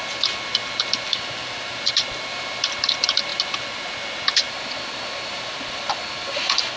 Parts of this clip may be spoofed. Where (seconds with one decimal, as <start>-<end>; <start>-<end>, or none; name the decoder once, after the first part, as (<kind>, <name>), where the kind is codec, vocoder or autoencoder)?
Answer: none